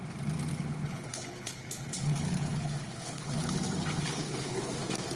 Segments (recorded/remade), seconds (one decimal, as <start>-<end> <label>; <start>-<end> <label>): 0.0-0.5 recorded; 0.5-3.6 remade; 3.6-4.0 recorded; 4.0-4.6 remade; 4.6-5.2 recorded

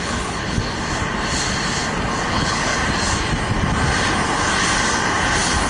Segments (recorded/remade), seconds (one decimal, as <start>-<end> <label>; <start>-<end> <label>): 0.0-0.6 remade; 0.6-2.3 recorded; 2.3-2.7 remade; 2.7-5.7 recorded

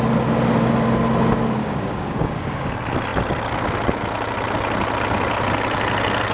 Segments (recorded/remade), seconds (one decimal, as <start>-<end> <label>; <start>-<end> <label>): 0.0-1.6 recorded; 1.6-2.7 remade; 2.7-6.3 recorded

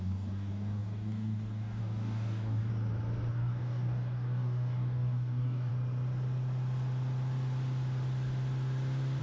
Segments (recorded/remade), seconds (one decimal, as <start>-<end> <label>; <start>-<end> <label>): 0.0-2.7 remade; 2.7-3.3 recorded; 3.3-5.7 remade; 5.7-9.2 recorded